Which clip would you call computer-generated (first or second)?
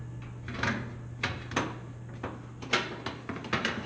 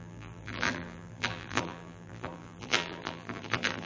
second